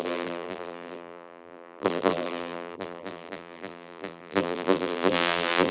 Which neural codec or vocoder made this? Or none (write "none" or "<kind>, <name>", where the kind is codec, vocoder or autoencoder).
vocoder, BigVGAN v2